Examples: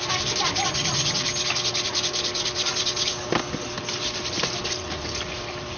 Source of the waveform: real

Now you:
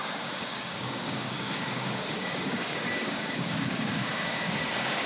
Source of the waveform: fake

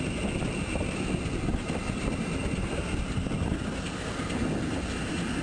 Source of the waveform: real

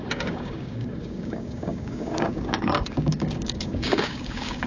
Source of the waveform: fake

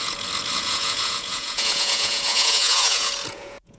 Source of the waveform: fake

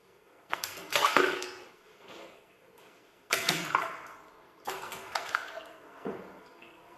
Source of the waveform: fake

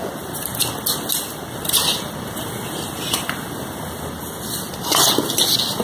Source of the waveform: real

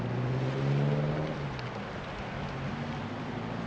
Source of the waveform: real